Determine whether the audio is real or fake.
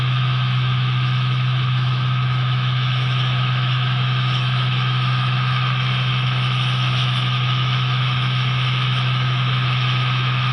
fake